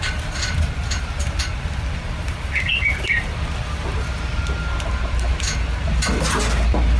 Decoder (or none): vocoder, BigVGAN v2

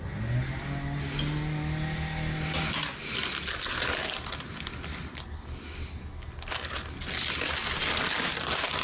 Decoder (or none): none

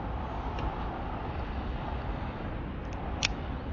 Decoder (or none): none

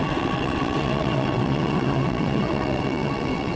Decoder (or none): vocoder, WaveNeXt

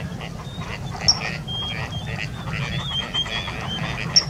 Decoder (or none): none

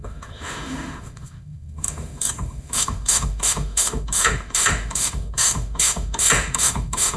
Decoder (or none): autoencoder, DAC-VAE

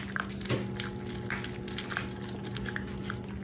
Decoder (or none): none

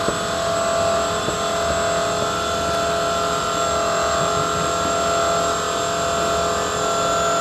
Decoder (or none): none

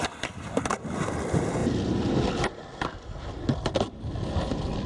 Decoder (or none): vocoder, BigVGAN v2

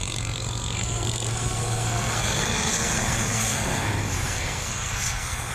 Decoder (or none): codec, SNAC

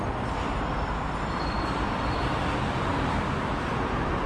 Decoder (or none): none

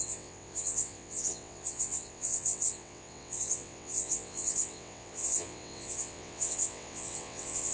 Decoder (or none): vocoder, WaveNeXt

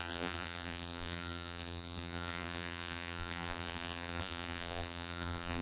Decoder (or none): vocoder, BigVGAN v2